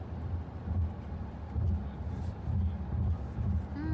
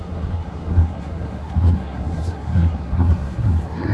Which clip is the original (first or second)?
first